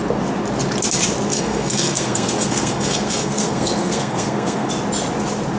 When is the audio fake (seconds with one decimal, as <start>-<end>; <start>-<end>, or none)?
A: 1.3-4.7